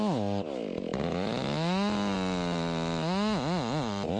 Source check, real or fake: real